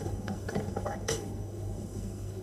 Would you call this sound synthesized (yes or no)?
yes